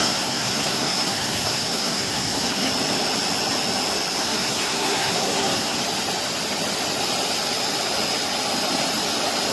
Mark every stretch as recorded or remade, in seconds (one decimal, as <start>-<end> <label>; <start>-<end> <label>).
0.0-2.7 remade; 2.7-4.2 recorded; 4.2-5.8 remade; 5.8-9.5 recorded